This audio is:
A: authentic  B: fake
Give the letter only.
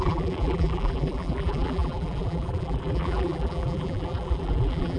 B